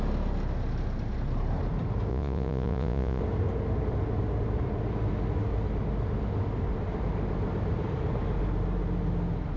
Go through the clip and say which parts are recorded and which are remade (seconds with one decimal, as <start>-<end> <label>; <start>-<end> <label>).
0.0-2.1 recorded; 2.1-3.2 remade; 3.2-9.6 recorded